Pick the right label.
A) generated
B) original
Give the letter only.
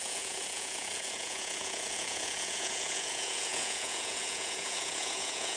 A